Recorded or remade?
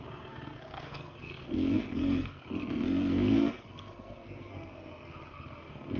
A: remade